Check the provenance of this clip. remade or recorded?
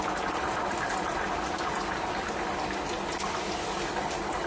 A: recorded